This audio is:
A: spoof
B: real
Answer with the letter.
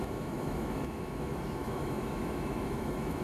A